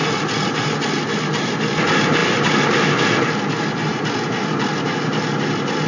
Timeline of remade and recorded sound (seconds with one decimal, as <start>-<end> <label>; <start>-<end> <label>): 0.0-5.9 recorded